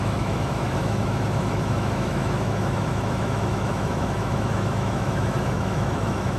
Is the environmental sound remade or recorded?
remade